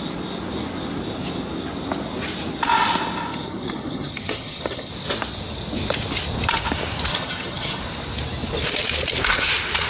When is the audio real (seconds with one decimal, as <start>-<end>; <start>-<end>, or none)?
0.0-3.3; 4.9-7.1; 7.8-9.9